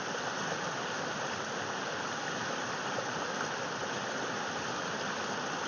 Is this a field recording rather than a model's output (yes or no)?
yes